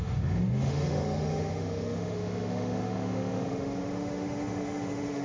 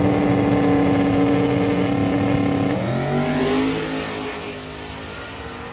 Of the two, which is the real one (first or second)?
second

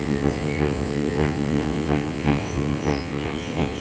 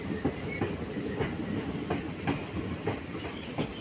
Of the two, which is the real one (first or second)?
second